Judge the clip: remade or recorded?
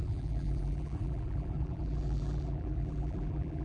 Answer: remade